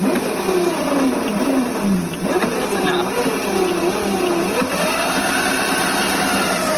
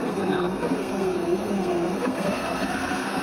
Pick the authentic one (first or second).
first